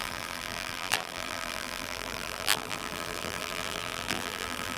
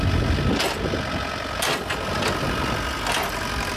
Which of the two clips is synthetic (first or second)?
first